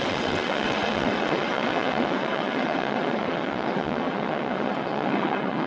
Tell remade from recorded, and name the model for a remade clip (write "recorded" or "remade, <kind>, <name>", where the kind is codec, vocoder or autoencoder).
remade, vocoder, WaveNeXt